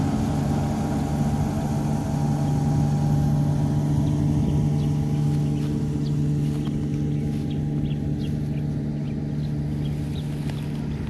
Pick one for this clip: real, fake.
real